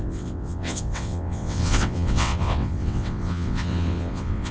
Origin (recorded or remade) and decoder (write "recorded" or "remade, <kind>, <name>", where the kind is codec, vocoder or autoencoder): remade, vocoder, WaveNeXt